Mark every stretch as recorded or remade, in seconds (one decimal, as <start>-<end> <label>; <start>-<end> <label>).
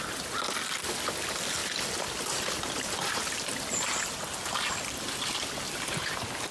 0.0-6.5 recorded